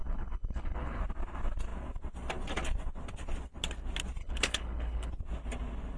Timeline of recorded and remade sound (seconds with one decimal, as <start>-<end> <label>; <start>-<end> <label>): 0.0-1.0 remade; 1.0-4.2 recorded; 4.2-5.1 remade; 5.1-6.0 recorded